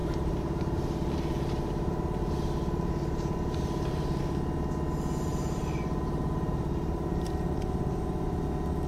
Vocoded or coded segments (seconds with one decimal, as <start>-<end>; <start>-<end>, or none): 0.0-4.2; 5.3-8.4